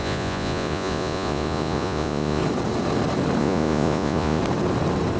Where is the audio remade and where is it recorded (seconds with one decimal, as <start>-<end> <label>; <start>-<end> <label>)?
0.0-2.4 remade; 2.4-3.4 recorded; 3.4-4.4 remade; 4.4-5.2 recorded